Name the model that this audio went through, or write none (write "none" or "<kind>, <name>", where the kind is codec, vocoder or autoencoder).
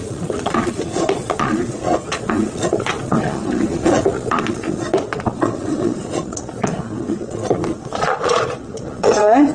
vocoder, Vocos